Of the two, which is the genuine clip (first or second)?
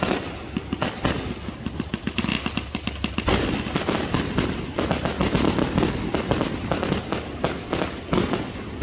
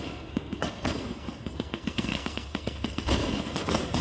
first